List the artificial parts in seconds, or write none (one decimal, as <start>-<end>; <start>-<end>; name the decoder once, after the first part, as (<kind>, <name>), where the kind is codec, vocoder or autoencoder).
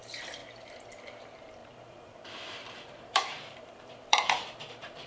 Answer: 0.0-0.4 (vocoder, BigVGAN v2); 1.1-5.1